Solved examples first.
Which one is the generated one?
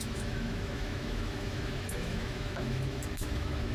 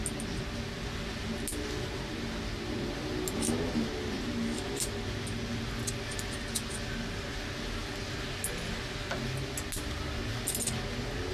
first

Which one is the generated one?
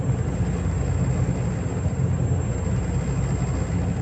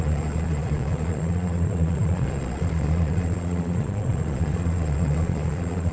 second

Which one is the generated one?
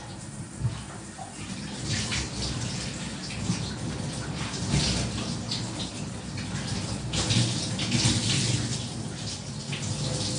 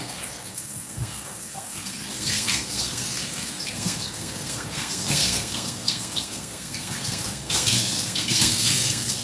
second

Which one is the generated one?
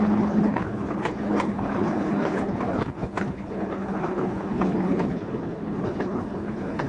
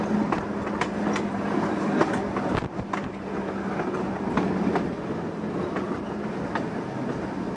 first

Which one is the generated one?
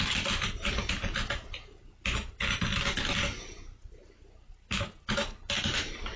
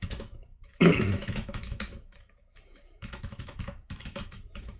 second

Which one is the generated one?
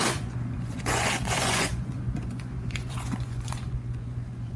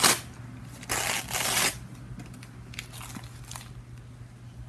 first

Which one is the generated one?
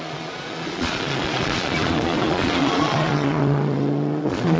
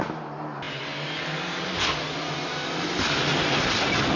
first